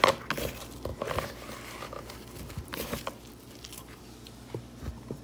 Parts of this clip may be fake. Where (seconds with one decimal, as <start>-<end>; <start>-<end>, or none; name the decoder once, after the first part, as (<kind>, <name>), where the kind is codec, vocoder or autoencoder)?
none